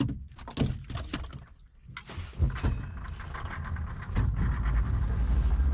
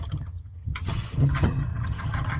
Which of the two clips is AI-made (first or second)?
second